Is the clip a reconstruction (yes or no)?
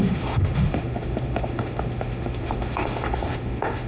yes